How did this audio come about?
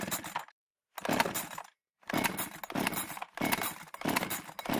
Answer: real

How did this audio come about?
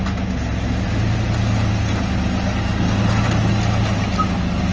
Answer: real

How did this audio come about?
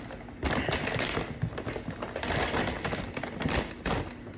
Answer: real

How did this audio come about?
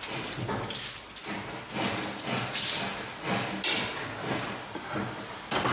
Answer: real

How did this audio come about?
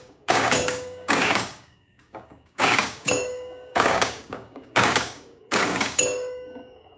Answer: fake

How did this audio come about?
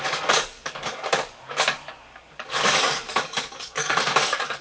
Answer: fake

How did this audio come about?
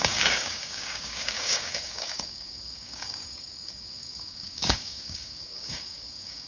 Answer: fake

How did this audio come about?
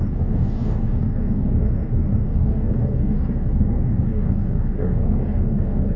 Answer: fake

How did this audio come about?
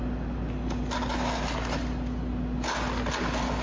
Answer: real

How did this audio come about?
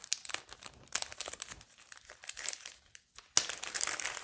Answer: real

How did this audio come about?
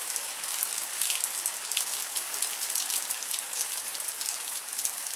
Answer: fake